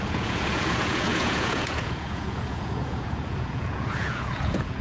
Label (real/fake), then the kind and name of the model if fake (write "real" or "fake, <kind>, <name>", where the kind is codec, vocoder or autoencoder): fake, vocoder, Vocos